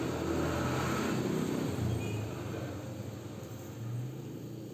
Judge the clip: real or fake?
real